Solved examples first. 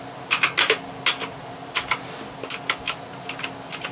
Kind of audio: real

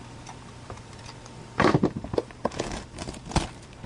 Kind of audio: fake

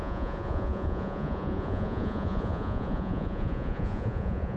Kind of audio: fake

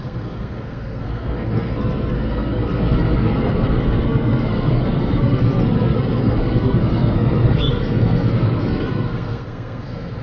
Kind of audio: fake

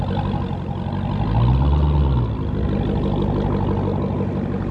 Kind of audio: real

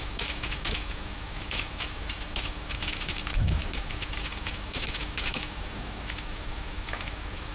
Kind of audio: fake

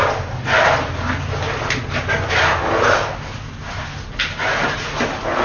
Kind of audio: real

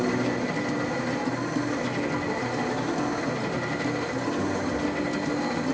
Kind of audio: real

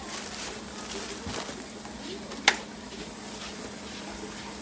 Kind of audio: real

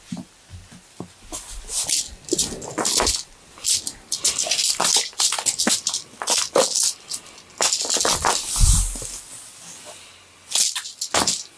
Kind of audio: real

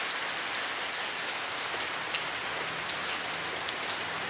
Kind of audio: real